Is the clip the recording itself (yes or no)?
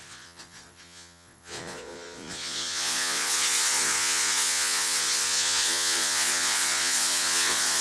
no